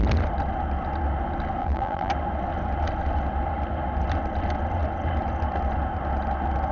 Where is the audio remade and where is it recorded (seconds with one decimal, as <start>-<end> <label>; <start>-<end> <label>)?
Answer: 0.0-1.6 recorded; 1.6-2.1 remade; 2.1-6.7 recorded